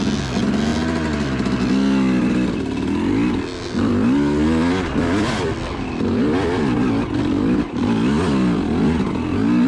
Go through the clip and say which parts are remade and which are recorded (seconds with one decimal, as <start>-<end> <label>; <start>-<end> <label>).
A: 0.0-9.7 recorded